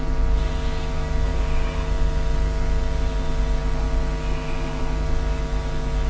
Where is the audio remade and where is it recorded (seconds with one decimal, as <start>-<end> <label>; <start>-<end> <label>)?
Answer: 0.0-6.1 recorded